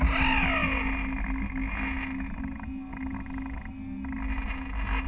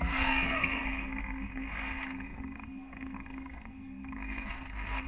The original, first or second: first